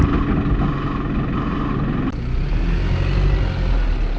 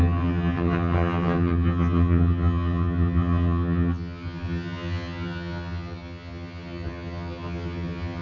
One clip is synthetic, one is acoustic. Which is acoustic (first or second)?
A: first